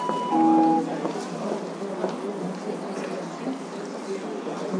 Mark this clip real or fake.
real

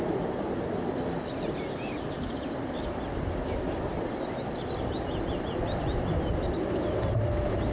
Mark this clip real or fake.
real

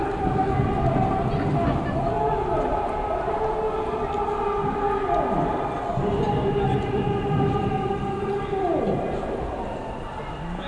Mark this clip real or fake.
real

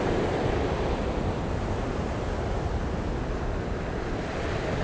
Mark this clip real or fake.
real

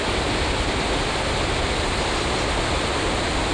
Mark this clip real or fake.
real